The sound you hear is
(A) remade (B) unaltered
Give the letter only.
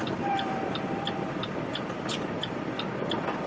A